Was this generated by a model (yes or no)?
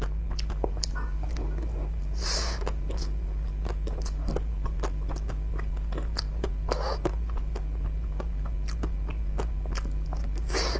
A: no